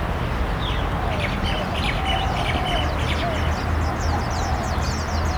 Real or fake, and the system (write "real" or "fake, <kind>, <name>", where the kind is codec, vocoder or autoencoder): real